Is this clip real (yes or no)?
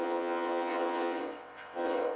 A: no